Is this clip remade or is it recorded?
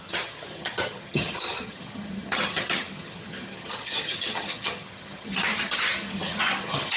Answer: remade